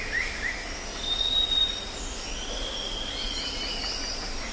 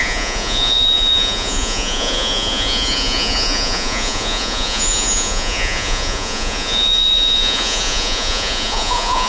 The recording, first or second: first